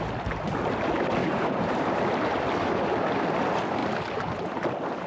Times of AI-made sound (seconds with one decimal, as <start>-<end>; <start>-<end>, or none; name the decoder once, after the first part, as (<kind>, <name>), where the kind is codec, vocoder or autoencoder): 1.2-2.0 (vocoder, BigVGAN v2)